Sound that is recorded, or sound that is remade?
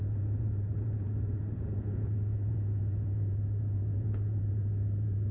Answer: remade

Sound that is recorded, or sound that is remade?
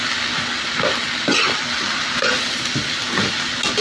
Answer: recorded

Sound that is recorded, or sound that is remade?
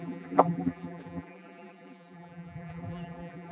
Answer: remade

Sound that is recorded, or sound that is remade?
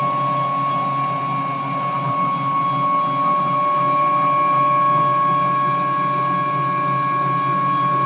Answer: recorded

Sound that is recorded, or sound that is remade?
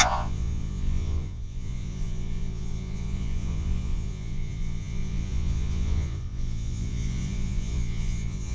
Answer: remade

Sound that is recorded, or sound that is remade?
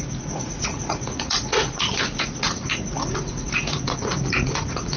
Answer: remade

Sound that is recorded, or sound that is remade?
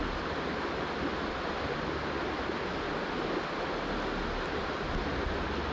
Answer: recorded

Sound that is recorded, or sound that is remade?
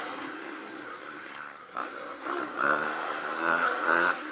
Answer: remade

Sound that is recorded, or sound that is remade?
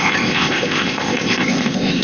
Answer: remade